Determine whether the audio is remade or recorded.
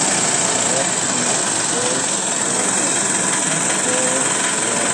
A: recorded